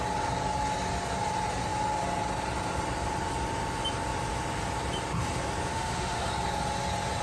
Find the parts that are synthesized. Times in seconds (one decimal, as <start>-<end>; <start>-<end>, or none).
5.7-6.3